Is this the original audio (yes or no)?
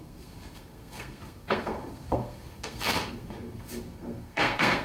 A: no